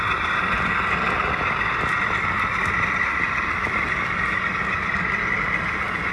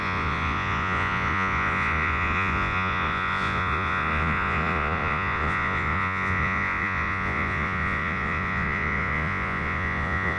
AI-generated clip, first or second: second